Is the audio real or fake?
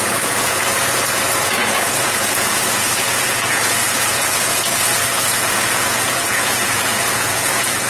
fake